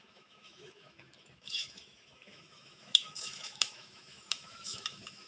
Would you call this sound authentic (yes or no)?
no